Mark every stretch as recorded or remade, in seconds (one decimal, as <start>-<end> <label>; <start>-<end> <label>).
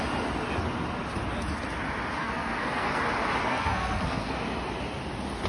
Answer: 0.0-2.2 recorded; 2.2-3.0 remade; 3.0-3.4 recorded; 3.4-4.3 remade; 4.3-5.5 recorded